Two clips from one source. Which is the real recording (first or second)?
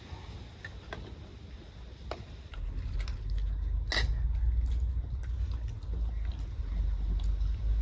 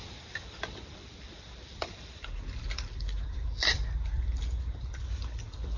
first